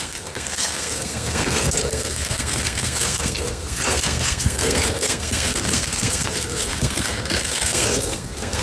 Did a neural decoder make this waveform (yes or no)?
yes